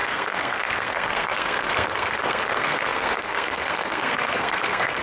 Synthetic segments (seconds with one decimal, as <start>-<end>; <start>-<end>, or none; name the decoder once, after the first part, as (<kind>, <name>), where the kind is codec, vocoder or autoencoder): 0.0-5.0 (codec, SNAC)